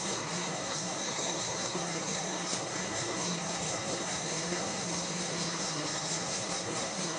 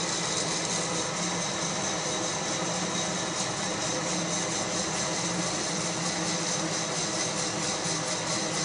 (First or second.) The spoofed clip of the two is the first